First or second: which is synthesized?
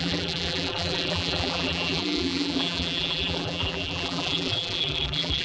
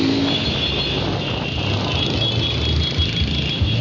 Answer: first